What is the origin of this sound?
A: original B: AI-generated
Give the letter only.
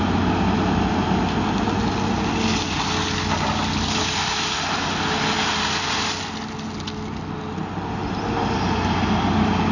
A